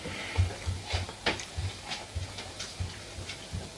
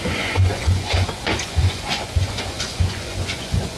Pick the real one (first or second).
first